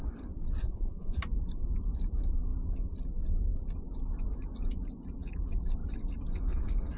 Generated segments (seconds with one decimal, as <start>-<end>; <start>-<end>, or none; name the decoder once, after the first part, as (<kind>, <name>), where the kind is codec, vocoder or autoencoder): 0.6-1.2 (vocoder, Vocos)